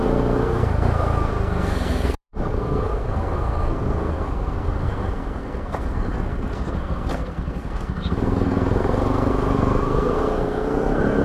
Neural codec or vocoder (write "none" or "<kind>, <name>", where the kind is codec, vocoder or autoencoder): codec, SNAC